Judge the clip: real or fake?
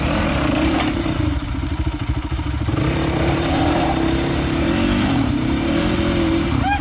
fake